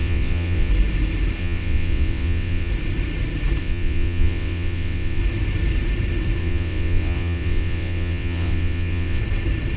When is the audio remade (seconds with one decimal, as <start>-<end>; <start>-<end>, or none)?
0.0-0.7; 1.4-2.7; 3.6-5.2; 6.4-9.2